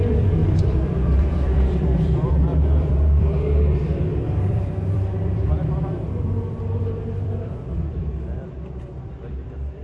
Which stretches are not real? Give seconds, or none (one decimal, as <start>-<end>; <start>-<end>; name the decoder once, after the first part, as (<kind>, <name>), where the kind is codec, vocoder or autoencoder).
0.0-9.8 (vocoder, BigVGAN v2)

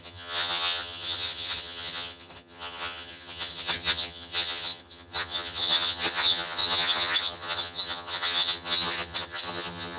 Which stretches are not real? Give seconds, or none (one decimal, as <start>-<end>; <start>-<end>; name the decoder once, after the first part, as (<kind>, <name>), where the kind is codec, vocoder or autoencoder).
0.0-10.0 (vocoder, HiFi-GAN)

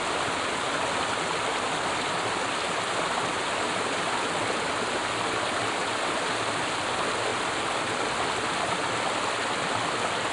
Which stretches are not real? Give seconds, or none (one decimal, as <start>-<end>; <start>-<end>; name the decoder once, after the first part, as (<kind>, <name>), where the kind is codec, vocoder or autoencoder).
none

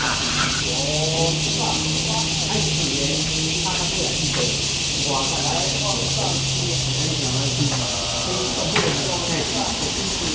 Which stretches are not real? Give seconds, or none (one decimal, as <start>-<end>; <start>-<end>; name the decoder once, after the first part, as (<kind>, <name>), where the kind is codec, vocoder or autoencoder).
none